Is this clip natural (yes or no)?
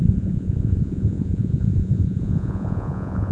no